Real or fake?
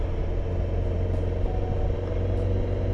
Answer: real